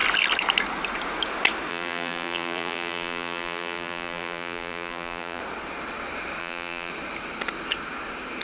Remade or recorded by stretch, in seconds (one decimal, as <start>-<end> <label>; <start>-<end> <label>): 0.0-1.7 recorded; 1.7-5.4 remade; 5.4-6.4 recorded; 6.4-6.9 remade; 6.9-8.4 recorded